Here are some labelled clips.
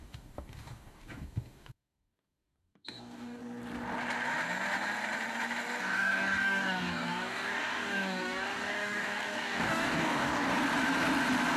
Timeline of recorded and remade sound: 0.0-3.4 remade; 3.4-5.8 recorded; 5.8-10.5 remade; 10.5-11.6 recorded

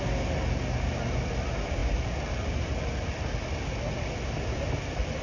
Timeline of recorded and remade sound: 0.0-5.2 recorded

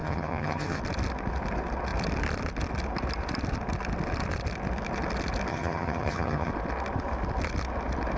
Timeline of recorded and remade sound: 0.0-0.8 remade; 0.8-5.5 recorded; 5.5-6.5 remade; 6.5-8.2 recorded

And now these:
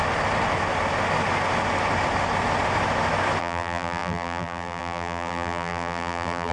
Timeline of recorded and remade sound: 0.0-3.4 recorded; 3.4-6.5 remade

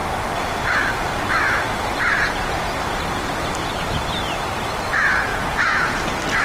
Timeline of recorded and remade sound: 0.0-5.3 recorded; 5.3-6.0 remade; 6.0-6.4 recorded

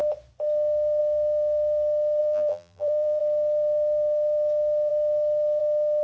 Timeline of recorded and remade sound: 0.0-2.2 recorded; 2.2-3.2 remade; 3.2-6.0 recorded

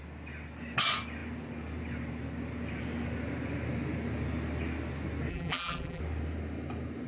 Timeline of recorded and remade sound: 0.0-5.3 recorded; 5.3-6.0 remade; 6.0-7.1 recorded